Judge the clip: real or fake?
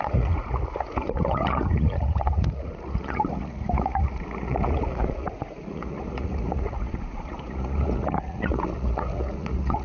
fake